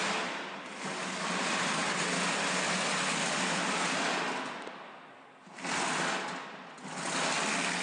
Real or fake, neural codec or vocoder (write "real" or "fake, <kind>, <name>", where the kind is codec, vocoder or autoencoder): real